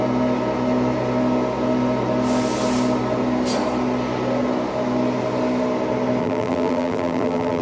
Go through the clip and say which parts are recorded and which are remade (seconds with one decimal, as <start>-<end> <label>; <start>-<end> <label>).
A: 0.0-6.2 recorded; 6.2-7.6 remade